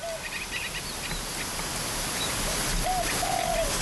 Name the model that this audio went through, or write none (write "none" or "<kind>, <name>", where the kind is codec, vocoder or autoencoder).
none